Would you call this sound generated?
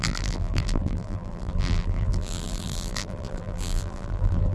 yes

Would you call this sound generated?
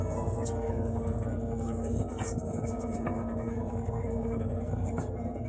yes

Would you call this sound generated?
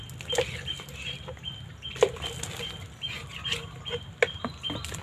no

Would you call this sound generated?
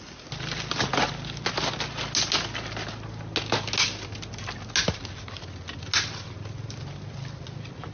no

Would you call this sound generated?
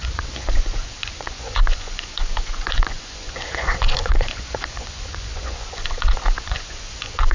yes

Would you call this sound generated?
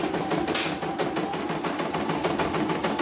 no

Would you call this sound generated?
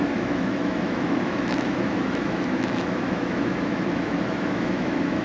yes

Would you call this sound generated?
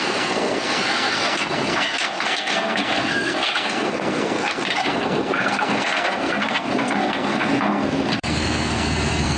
yes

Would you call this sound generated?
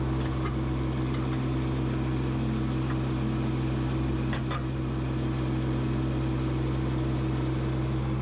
no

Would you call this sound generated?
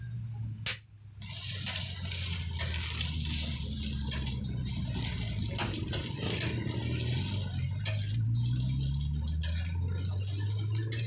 no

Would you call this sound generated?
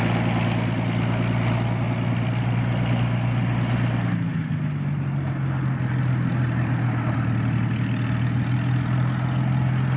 no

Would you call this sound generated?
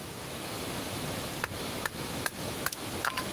yes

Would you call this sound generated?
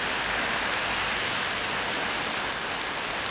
no